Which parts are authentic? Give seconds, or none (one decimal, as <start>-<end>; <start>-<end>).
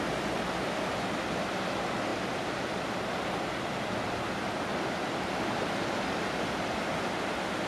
0.0-7.7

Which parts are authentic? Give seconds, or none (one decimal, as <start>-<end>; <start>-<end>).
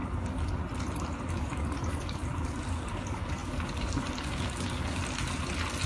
0.6-1.4; 5.0-5.9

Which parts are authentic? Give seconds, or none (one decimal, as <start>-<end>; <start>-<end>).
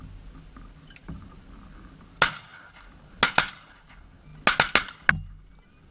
0.0-5.9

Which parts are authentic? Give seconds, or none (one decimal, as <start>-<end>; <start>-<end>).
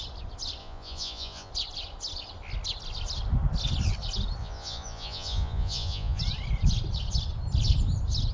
0.0-0.6; 1.5-4.4; 6.2-8.3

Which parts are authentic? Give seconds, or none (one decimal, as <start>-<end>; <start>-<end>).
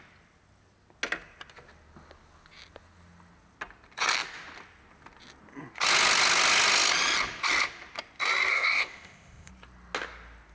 0.0-8.5; 9.5-10.5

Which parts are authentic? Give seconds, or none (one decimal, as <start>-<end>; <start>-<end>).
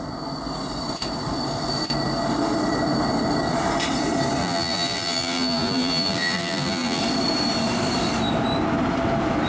0.0-4.4; 7.0-9.5